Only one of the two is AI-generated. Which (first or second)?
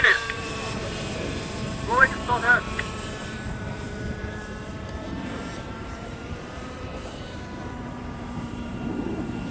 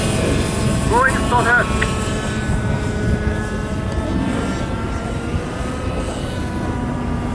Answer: first